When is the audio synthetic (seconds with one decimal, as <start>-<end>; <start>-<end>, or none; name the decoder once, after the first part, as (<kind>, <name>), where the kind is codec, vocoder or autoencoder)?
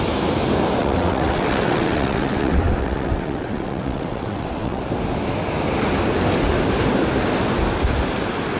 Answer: 0.8-4.8 (vocoder, WaveNeXt)